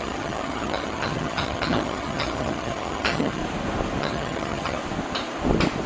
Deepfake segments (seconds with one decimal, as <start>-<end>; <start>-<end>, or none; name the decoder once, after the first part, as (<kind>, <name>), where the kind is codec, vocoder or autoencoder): 0.0-3.4 (vocoder, HiFi-GAN); 4.0-4.8